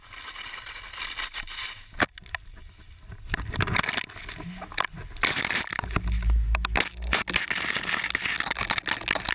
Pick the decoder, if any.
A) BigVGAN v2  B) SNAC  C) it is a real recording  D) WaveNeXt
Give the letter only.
C